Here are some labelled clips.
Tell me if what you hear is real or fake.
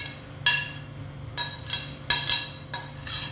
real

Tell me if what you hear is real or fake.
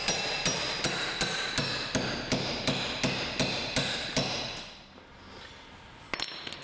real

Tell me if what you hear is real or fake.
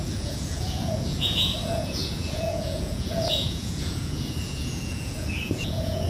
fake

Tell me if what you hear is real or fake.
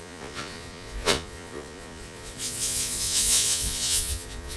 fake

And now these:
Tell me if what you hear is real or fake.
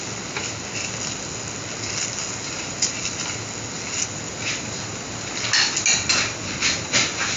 real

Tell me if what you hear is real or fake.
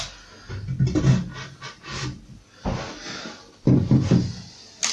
real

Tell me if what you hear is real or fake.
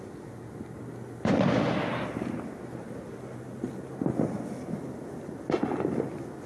real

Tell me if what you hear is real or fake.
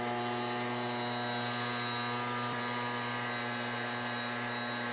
real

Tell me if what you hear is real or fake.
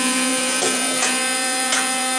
fake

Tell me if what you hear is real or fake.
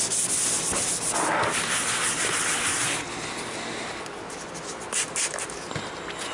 real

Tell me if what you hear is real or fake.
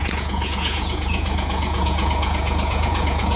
fake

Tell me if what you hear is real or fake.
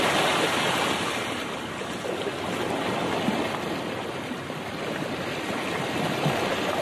real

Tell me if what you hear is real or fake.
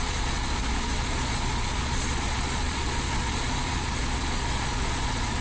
fake